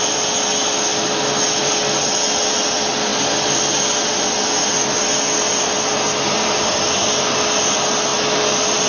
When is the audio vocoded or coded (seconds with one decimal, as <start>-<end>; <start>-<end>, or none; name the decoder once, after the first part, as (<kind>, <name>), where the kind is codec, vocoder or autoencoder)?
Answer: none